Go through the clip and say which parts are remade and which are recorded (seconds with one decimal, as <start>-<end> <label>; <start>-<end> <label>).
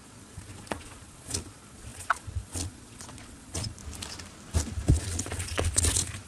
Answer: 0.0-3.8 remade; 3.8-4.9 recorded; 4.9-6.3 remade